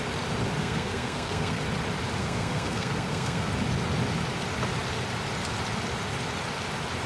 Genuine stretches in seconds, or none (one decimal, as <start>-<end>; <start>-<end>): 0.0-0.6; 1.6-2.2; 3.5-7.1